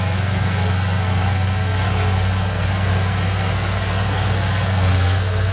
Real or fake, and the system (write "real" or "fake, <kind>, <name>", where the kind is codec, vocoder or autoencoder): fake, codec, SNAC